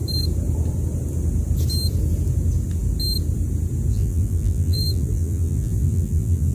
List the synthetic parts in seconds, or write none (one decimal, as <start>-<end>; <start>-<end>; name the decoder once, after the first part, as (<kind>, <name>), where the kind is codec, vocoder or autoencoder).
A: 3.9-6.5 (vocoder, BigVGAN v2)